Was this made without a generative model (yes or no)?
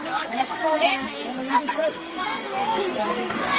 no